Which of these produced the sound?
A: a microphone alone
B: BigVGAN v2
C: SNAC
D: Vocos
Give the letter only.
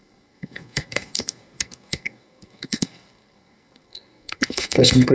C